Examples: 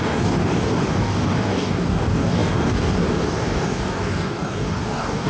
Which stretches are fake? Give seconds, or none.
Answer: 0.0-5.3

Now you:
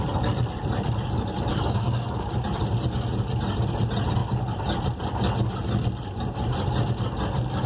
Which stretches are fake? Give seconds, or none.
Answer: 1.5-2.3

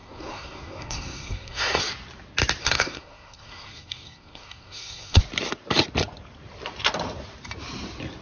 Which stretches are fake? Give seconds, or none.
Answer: 0.0-1.8; 2.6-5.2

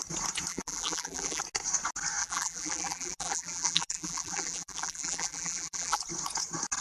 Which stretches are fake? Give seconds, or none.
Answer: 0.5-1.4; 2.2-6.0

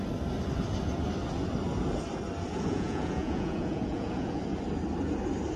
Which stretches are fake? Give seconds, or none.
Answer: 2.5-4.4

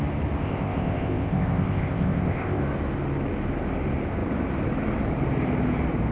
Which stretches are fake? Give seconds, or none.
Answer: 0.4-2.6

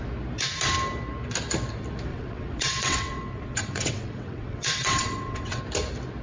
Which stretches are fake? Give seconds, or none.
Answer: 2.1-5.6

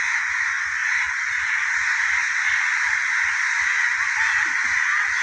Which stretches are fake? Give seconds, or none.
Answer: 0.8-1.4